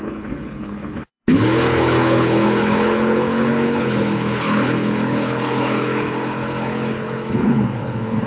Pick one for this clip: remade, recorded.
remade